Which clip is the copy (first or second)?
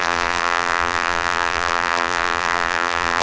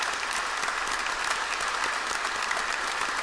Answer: first